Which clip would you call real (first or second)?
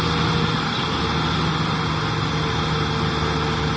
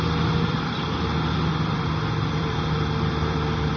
first